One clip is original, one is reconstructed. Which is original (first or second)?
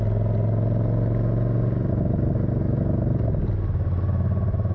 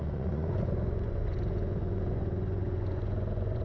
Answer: first